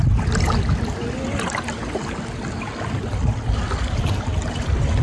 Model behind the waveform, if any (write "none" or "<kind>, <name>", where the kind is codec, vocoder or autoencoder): none